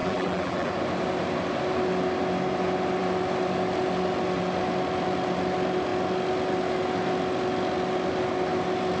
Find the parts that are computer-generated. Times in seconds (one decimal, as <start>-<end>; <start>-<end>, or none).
0.0-0.7